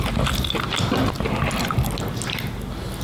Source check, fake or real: real